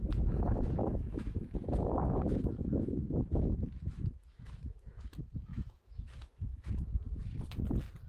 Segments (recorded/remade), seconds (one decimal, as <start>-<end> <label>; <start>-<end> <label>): 0.0-0.8 recorded; 0.8-5.0 remade; 5.0-5.5 recorded; 5.5-6.7 remade; 6.7-8.1 recorded